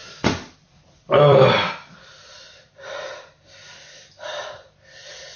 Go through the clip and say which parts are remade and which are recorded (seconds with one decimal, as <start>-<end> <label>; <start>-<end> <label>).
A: 0.0-1.7 remade; 1.7-5.4 recorded